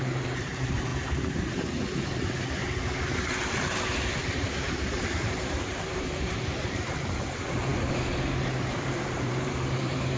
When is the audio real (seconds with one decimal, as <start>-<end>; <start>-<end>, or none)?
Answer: 2.6-4.4